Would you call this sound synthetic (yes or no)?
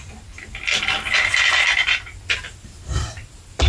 no